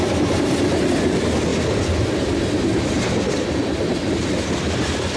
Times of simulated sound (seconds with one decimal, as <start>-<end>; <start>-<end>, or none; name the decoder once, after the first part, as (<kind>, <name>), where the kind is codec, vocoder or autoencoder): none